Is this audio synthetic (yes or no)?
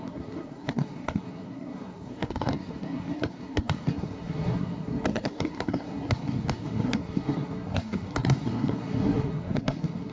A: yes